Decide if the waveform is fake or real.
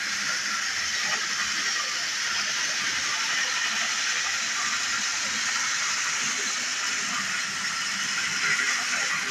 real